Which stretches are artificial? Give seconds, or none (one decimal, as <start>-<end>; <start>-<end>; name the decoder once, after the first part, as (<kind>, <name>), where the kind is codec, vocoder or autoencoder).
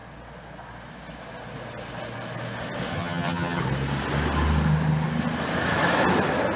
2.9-3.6 (vocoder, HiFi-GAN)